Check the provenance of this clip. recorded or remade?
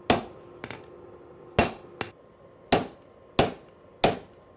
recorded